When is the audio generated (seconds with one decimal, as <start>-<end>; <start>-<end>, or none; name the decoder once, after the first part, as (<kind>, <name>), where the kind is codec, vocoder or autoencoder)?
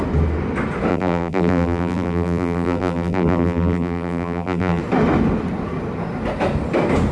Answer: 0.9-4.8 (vocoder, BigVGAN v2)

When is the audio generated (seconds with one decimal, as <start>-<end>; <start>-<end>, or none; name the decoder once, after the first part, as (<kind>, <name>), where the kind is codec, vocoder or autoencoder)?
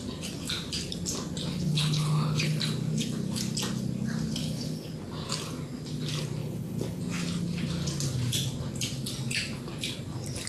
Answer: 1.5-2.6 (codec, HILCodec); 4.4-4.9; 6.4-7.0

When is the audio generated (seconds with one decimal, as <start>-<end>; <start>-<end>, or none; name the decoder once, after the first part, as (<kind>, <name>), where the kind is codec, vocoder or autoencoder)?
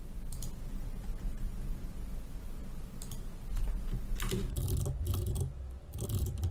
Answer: none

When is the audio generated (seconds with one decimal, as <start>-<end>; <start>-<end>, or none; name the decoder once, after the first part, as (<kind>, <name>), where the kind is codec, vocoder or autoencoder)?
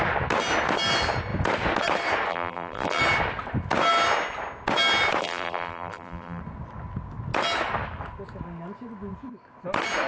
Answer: 2.3-3.0 (vocoder, BigVGAN v2); 5.2-6.4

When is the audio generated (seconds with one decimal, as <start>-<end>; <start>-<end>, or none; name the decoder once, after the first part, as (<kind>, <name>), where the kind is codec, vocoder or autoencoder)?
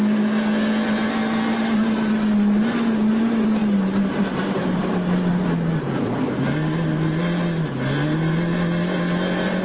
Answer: 3.6-4.8 (vocoder, BigVGAN v2)